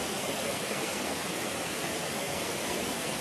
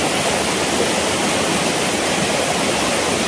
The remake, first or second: first